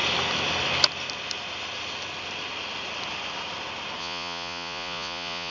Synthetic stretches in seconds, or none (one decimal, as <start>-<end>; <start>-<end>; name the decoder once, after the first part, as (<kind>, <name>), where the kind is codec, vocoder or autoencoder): 4.0-5.5 (vocoder, Vocos)